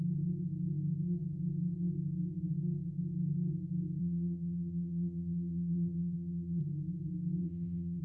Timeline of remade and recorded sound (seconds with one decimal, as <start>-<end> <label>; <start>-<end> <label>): 0.0-4.0 recorded; 4.0-6.6 remade; 6.6-7.4 recorded; 7.4-8.0 remade